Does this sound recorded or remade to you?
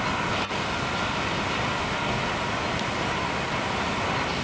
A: recorded